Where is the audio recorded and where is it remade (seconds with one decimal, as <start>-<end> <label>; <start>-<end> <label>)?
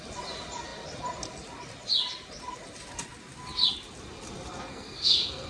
0.0-4.7 recorded; 4.7-5.5 remade